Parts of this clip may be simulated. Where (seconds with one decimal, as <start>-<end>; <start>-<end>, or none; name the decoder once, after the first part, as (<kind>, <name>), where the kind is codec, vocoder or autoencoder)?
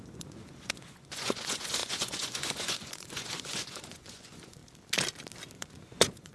0.0-4.6 (vocoder, Vocos); 5.5-6.3